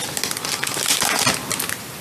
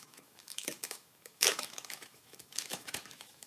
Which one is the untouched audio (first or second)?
first